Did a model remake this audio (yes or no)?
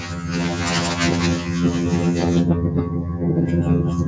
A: yes